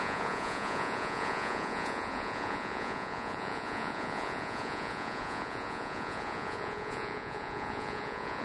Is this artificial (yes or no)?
yes